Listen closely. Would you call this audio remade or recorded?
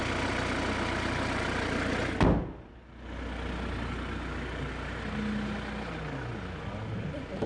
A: recorded